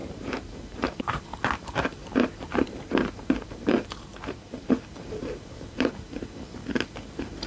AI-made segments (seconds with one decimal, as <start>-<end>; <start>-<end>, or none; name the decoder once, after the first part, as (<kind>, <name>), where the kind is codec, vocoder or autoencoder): 0.0-1.2 (vocoder, BigVGAN v2); 2.0-4.5; 5.2-5.9